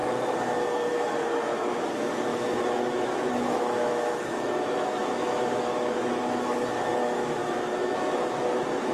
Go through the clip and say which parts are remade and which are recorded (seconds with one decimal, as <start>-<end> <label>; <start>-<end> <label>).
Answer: 0.0-0.9 recorded; 0.9-8.9 remade

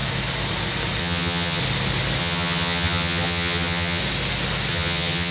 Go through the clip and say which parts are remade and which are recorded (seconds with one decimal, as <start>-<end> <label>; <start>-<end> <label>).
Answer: 0.0-1.0 recorded; 1.0-1.6 remade; 1.6-2.2 recorded; 2.2-4.0 remade; 4.0-4.7 recorded; 4.7-5.3 remade